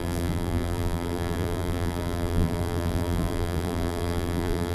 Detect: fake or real fake